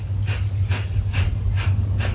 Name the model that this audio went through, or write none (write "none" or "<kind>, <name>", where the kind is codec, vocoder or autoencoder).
none